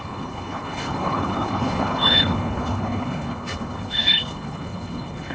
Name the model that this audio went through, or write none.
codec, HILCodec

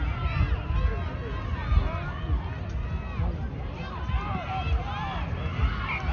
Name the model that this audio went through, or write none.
none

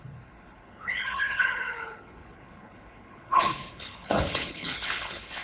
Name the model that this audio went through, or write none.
codec, HILCodec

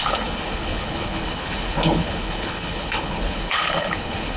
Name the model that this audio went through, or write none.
codec, HILCodec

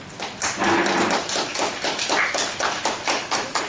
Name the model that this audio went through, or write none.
none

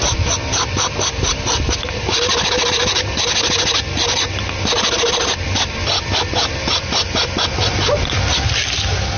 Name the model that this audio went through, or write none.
none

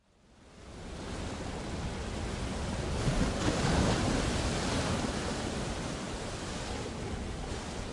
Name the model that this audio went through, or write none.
none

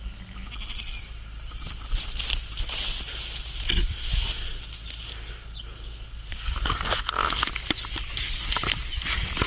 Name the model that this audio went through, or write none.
none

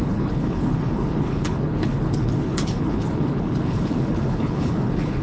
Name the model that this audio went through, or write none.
codec, HILCodec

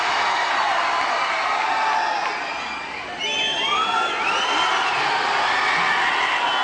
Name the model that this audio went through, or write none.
none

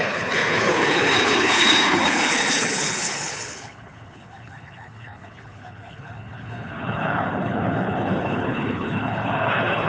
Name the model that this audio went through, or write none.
codec, HILCodec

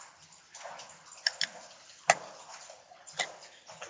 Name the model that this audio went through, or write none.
none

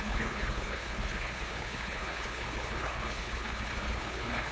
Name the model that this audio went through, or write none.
codec, HILCodec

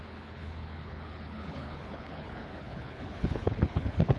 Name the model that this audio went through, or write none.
codec, HILCodec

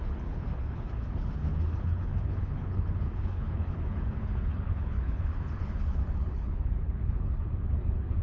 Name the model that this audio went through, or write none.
codec, HILCodec